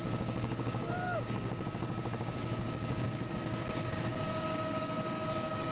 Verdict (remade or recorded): remade